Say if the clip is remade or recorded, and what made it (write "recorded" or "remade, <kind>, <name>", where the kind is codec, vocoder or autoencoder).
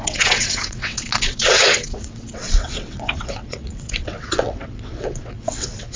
remade, vocoder, WaveNeXt